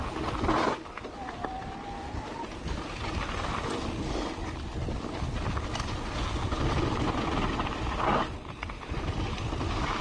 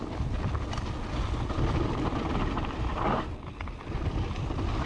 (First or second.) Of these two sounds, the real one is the first